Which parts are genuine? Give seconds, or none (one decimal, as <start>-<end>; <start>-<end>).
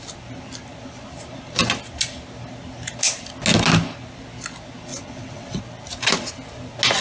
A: 0.0-4.9; 5.6-7.0